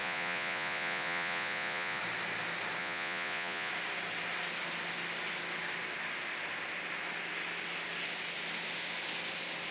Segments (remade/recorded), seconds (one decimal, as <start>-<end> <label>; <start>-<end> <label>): 0.0-2.0 remade; 2.0-2.8 recorded; 2.8-3.7 remade; 3.7-9.7 recorded